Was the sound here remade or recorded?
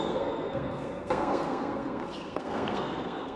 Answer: remade